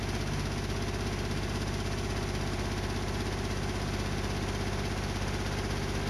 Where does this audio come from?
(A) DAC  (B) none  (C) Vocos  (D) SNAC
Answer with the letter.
B